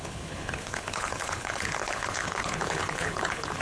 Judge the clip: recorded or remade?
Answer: remade